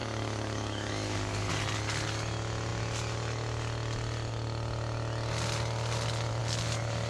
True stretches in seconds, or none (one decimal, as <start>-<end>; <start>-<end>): 1.5-7.1